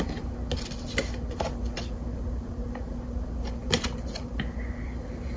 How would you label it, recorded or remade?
recorded